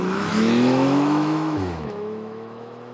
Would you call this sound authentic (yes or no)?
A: no